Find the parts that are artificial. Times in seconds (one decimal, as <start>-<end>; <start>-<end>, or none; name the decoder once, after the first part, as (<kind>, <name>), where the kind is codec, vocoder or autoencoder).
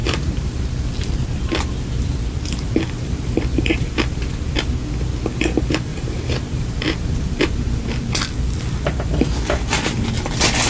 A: 0.0-0.8 (vocoder, BigVGAN v2); 5.9-7.4